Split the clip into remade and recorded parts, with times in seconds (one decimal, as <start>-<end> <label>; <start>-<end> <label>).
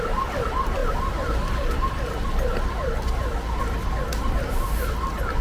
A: 0.0-5.4 remade